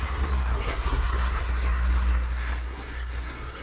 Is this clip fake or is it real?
fake